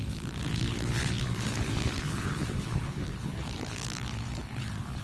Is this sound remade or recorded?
remade